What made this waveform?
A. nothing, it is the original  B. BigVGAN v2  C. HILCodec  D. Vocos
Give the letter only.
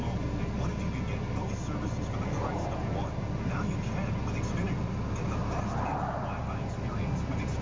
A